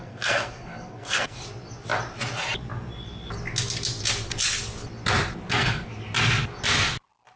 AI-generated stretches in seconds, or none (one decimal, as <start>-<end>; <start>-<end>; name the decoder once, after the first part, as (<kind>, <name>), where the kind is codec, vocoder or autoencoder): 0.0-1.4 (codec, SNAC); 5.5-5.9